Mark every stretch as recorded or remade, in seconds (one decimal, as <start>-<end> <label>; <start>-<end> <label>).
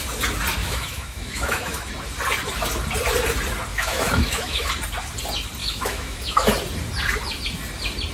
0.0-0.6 recorded; 0.6-1.9 remade; 1.9-3.7 recorded; 3.7-4.7 remade; 4.7-5.6 recorded; 5.6-6.5 remade; 6.5-8.1 recorded